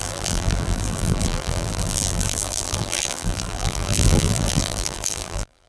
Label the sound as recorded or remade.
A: remade